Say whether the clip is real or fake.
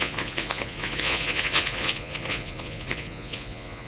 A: fake